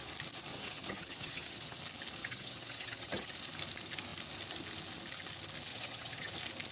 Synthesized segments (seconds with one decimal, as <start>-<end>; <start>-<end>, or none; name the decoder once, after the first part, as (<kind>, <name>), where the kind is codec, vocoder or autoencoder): 0.5-1.8 (vocoder, HiFi-GAN); 2.2-3.3; 5.7-6.3

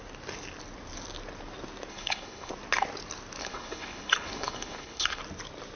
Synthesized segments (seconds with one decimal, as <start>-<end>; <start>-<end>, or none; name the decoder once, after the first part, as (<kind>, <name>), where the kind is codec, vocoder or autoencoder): 1.9-2.5 (codec, HILCodec); 3.4-5.2

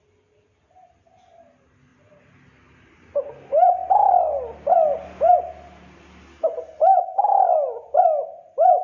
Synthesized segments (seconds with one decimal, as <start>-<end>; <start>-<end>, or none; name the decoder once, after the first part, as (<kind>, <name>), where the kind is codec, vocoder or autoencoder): none

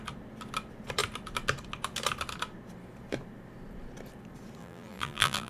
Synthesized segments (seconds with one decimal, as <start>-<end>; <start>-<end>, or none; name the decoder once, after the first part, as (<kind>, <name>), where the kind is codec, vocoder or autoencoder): 4.6-5.5 (vocoder, BigVGAN v2)